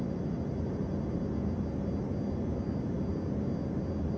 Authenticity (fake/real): real